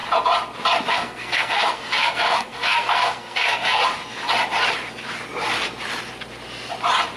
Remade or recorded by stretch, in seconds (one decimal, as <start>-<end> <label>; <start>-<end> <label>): 0.0-0.9 recorded; 0.9-3.8 remade; 3.8-7.2 recorded